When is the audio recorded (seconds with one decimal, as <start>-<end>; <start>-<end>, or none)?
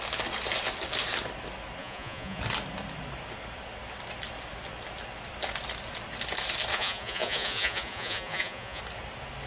0.0-1.8; 2.4-6.7; 8.8-9.5